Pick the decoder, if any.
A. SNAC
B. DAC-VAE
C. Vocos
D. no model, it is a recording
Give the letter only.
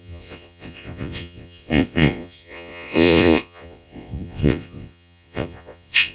C